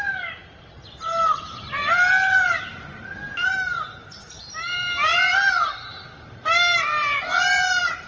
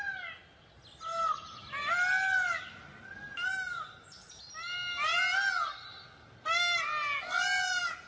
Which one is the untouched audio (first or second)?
second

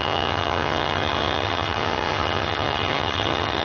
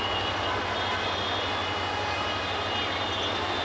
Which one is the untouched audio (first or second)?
second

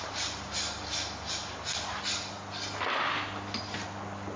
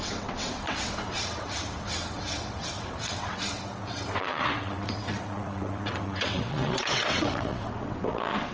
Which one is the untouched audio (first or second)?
first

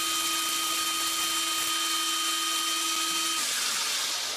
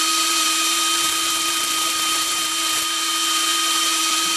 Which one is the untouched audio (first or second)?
first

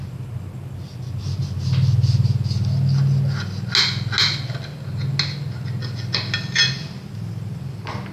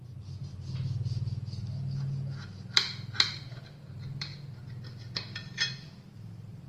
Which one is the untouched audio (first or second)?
first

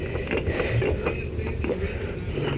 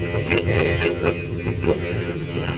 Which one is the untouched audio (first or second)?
first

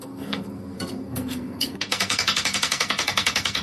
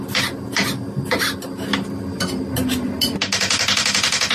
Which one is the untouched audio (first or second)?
second